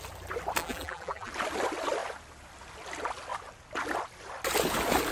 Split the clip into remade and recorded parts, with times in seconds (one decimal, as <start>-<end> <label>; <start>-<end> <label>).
0.0-0.6 recorded; 0.6-1.3 remade; 1.3-5.1 recorded